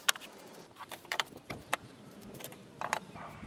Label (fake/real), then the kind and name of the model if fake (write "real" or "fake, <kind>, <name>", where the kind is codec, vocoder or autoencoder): fake, vocoder, BigVGAN v2